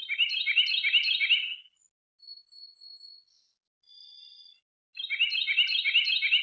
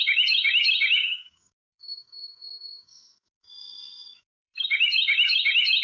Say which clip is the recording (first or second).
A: first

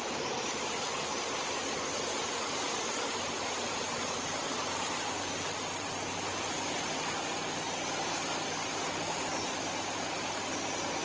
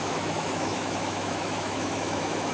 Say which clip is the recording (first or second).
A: first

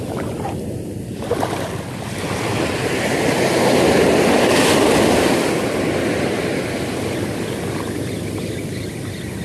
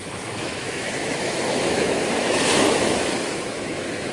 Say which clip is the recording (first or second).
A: first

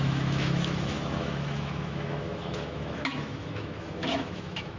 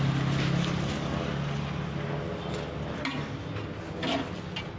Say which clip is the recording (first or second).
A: second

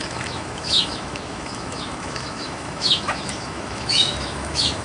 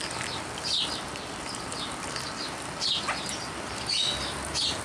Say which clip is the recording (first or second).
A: second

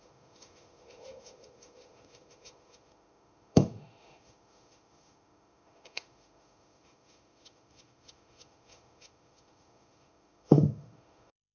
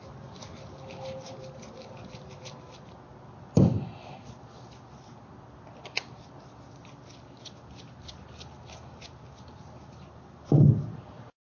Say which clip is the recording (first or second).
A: second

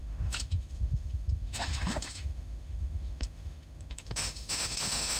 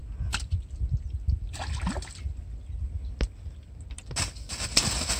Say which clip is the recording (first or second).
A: second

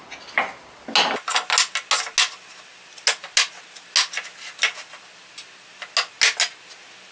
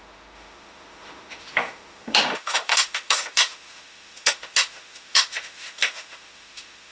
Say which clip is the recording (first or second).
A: first